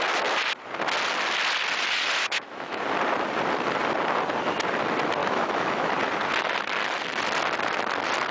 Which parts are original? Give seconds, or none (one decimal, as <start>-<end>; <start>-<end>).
0.0-2.2; 2.8-5.2; 5.9-8.3